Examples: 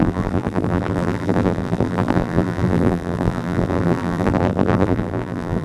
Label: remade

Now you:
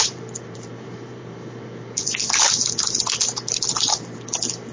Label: remade